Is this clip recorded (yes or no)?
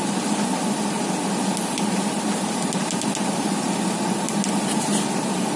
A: yes